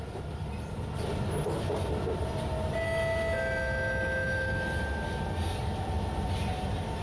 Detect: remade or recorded recorded